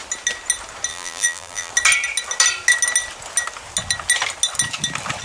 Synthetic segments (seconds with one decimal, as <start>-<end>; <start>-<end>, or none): 0.9-1.7